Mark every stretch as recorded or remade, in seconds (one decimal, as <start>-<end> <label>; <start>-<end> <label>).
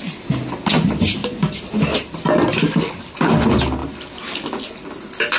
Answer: 0.0-5.4 recorded